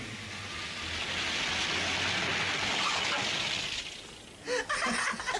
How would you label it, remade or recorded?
recorded